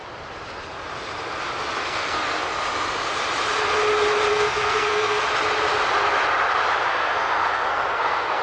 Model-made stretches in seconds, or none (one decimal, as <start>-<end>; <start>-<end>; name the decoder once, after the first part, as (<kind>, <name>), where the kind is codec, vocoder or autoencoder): 1.8-2.5 (codec, SNAC); 4.3-5.2; 6.9-8.4